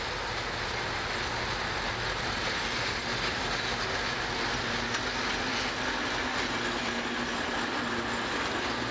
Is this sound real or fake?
real